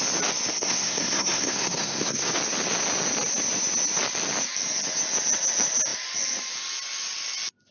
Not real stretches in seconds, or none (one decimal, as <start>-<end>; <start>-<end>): 0.5-2.3